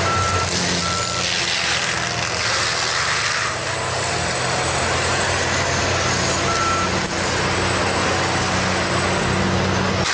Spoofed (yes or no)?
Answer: no